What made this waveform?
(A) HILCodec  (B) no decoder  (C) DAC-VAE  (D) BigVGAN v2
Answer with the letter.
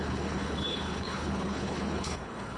A